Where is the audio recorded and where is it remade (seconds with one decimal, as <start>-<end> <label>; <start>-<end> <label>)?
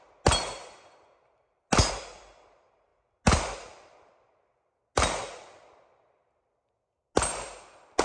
0.0-8.0 recorded